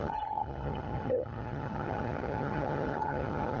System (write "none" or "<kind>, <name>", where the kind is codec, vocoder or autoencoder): vocoder, HiFi-GAN